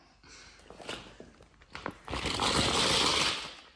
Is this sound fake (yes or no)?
no